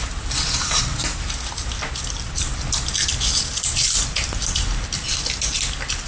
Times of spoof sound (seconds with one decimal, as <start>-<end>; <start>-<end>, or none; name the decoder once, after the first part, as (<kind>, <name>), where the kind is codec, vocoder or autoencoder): none